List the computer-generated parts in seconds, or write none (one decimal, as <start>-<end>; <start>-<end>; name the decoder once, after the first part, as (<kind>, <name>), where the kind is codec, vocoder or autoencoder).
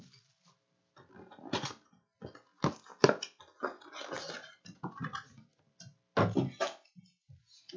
none